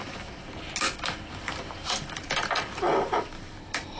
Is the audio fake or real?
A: real